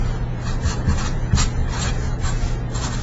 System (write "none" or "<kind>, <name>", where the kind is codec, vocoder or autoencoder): none